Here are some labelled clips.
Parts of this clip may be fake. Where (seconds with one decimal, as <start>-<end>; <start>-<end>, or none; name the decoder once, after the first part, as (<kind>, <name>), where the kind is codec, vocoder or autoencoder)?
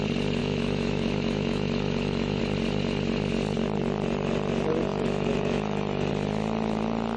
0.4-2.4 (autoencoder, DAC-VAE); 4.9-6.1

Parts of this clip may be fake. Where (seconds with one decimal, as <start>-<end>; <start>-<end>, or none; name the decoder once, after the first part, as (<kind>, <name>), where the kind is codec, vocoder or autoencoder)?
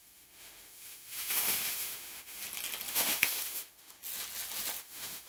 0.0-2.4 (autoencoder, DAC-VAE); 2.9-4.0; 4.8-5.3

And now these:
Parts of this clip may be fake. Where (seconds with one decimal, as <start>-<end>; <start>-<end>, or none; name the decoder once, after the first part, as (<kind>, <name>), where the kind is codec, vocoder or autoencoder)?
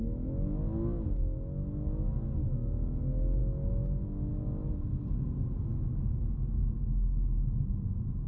5.7-6.6 (autoencoder, DAC-VAE)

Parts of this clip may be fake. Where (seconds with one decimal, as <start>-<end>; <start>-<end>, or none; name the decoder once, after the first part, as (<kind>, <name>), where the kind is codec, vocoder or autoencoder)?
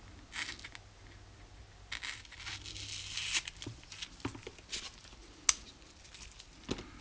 none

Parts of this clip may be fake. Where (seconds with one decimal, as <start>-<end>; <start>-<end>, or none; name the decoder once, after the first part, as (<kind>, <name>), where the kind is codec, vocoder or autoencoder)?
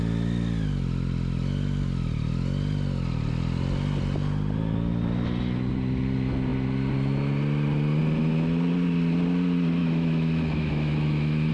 9.8-11.5 (autoencoder, DAC-VAE)